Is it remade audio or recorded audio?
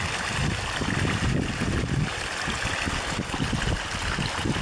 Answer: recorded